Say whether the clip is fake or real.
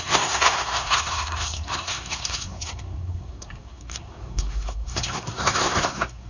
fake